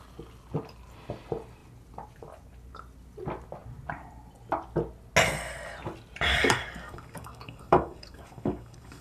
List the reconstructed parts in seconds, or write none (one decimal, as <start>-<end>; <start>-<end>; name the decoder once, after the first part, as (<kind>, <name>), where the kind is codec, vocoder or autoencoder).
6.3-9.0 (codec, DAC)